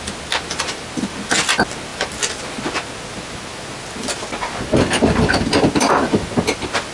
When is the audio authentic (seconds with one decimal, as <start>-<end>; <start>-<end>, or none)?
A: 0.0-6.9